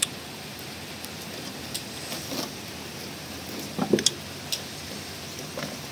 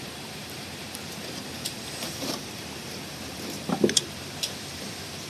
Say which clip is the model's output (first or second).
second